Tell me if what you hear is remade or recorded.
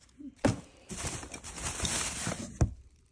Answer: recorded